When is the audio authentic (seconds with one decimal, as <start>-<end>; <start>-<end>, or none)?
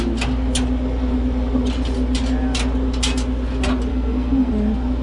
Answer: 0.0-3.9; 4.5-5.0